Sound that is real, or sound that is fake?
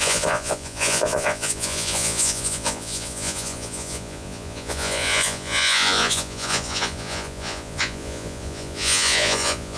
fake